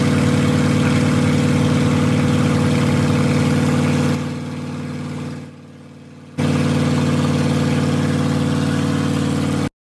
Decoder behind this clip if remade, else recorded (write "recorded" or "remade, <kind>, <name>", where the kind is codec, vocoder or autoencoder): recorded